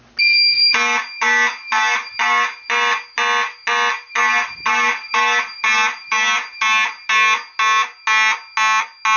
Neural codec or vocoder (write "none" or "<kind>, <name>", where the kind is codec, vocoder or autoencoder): none